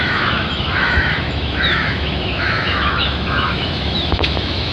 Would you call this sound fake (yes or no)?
yes